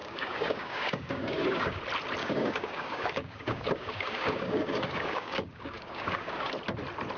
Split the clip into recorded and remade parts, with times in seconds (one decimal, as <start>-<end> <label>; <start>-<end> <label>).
0.0-1.8 remade; 1.8-2.2 recorded; 2.2-6.5 remade; 6.5-7.2 recorded